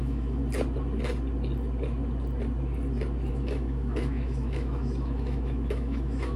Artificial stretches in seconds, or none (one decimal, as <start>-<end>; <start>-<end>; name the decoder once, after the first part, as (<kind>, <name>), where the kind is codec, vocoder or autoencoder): 0.0-0.4 (autoencoder, DAC-VAE); 3.3-6.4